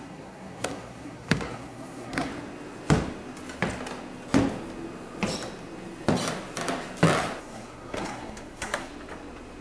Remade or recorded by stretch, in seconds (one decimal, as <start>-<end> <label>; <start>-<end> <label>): 0.0-2.3 remade; 2.3-7.4 recorded; 7.4-8.9 remade; 8.9-9.6 recorded